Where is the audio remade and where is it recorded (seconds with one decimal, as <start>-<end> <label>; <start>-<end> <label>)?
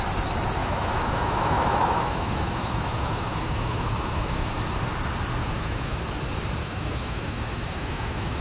0.0-0.6 recorded; 0.6-4.5 remade; 4.5-5.4 recorded; 5.4-6.0 remade; 6.0-6.6 recorded; 6.6-8.4 remade